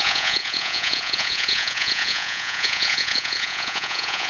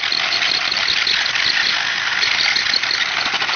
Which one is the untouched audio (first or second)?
second